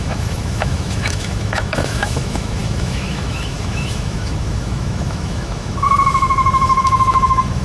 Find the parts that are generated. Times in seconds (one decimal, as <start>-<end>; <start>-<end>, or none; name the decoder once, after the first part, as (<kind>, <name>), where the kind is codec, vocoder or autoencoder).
0.0-7.6 (autoencoder, DAC-VAE)